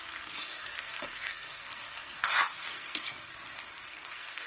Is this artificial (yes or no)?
yes